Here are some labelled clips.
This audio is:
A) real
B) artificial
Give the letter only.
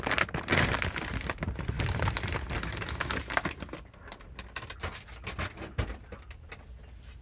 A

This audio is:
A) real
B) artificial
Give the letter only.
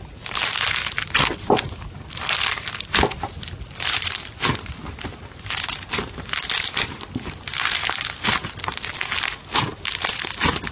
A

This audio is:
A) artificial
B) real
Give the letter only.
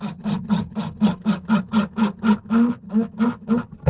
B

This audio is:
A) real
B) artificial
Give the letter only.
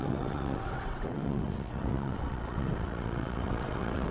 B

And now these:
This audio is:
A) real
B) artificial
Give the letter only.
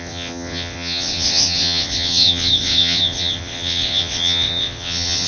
B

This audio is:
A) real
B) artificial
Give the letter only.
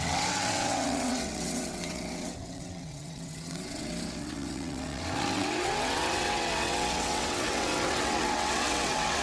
B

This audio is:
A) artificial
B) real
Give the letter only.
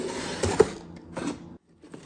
B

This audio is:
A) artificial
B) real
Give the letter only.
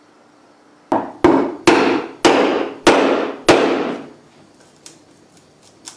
B